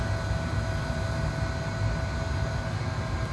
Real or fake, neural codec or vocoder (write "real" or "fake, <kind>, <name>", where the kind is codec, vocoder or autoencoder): real